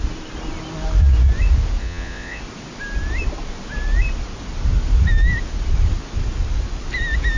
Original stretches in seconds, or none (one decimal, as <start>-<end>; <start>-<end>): 0.0-1.8; 2.4-7.4